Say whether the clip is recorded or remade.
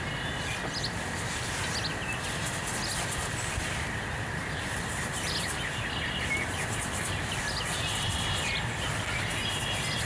recorded